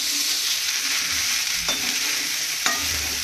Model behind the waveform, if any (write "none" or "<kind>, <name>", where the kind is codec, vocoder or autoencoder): vocoder, BigVGAN v2